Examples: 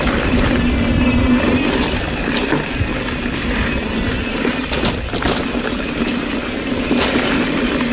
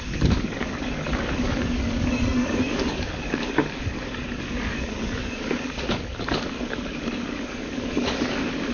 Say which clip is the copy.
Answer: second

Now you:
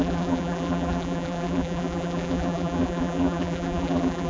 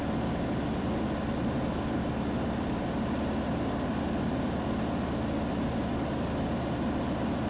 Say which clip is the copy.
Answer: first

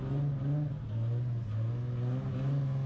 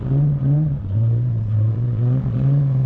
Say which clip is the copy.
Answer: second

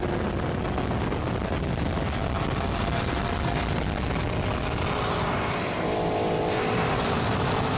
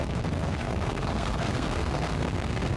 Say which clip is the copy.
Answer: second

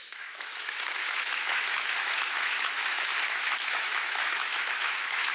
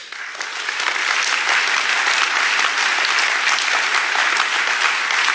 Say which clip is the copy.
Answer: first